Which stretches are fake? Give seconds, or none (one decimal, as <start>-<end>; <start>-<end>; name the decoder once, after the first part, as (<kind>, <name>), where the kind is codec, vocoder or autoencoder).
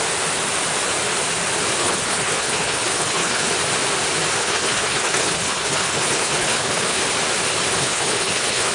1.8-3.5 (codec, HILCodec); 4.4-7.0; 7.7-8.7